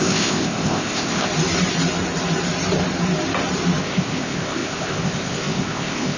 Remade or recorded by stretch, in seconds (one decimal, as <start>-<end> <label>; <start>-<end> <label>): 0.0-1.3 remade; 1.3-3.8 recorded; 3.8-6.2 remade